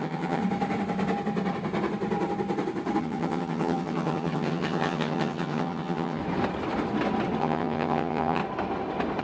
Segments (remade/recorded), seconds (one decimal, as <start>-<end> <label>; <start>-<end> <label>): 0.0-0.4 remade; 0.4-3.0 recorded; 3.0-6.2 remade; 6.2-7.4 recorded; 7.4-8.4 remade; 8.4-9.2 recorded